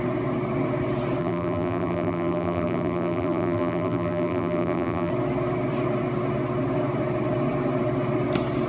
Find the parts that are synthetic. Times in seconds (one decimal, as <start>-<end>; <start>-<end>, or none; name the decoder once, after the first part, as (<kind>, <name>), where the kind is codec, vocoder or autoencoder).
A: 1.2-5.1 (vocoder, BigVGAN v2)